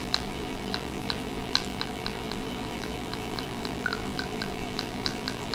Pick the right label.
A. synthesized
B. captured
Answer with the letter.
A